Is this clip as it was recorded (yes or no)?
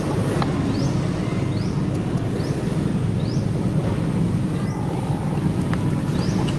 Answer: yes